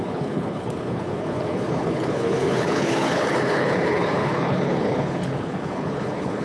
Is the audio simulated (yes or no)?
yes